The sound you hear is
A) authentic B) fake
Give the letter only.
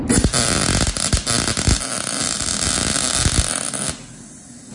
A